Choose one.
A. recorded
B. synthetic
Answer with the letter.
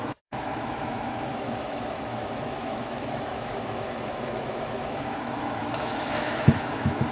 B